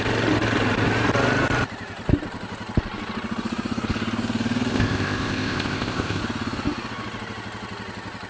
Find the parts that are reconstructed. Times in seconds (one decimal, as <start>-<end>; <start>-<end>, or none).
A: 4.7-6.2